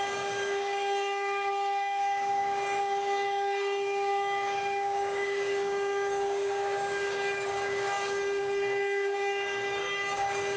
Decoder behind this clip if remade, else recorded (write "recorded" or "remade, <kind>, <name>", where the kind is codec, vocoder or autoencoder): remade, codec, DAC